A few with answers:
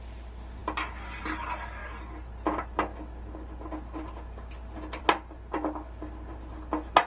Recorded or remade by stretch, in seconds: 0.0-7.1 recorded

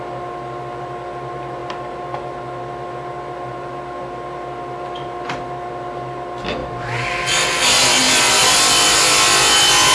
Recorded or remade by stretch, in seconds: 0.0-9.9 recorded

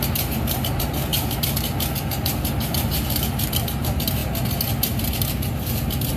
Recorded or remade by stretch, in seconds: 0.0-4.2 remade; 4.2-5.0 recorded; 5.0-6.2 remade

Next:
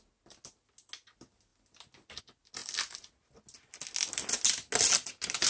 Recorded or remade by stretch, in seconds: 0.0-5.5 recorded

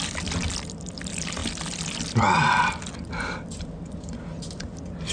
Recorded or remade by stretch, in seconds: 0.0-1.4 remade; 1.4-3.6 recorded; 3.6-5.1 remade

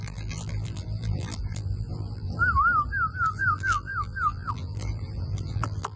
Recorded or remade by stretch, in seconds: 0.0-2.4 remade; 2.4-3.3 recorded; 3.3-6.0 remade